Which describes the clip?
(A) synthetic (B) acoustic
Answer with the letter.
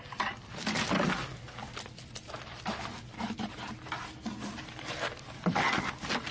B